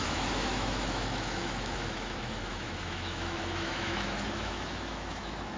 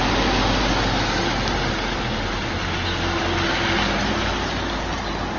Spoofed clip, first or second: first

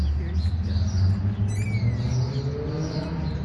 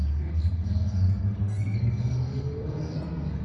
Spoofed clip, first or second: second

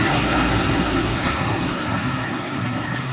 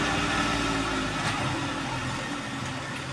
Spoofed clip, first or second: first